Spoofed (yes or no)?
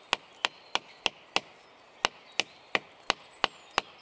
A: no